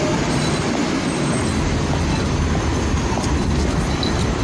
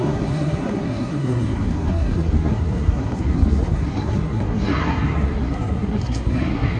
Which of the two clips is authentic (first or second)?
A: first